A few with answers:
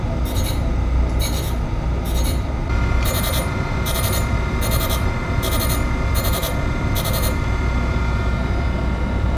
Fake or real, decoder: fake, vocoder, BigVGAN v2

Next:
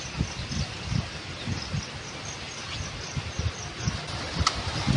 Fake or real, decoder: real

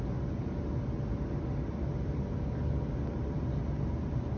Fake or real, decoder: real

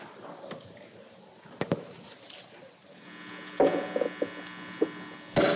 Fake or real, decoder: real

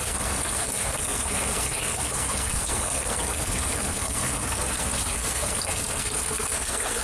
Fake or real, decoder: fake, codec, SNAC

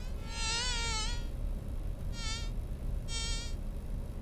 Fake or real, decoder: real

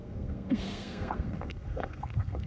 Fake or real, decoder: fake, codec, SNAC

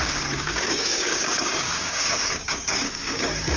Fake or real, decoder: fake, codec, DAC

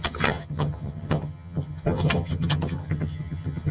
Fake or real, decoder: fake, vocoder, HiFi-GAN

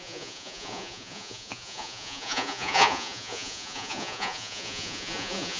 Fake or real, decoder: fake, vocoder, Vocos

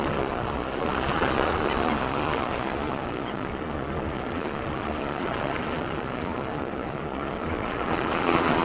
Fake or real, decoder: fake, vocoder, Vocos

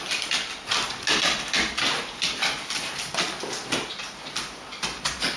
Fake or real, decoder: fake, vocoder, BigVGAN v2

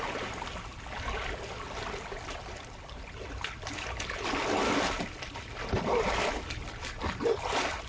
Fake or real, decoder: real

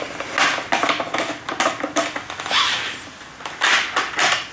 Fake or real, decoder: real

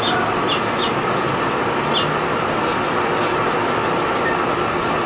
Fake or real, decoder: real